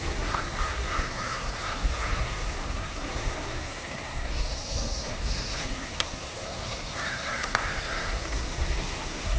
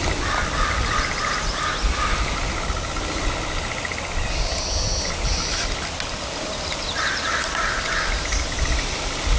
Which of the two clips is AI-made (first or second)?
first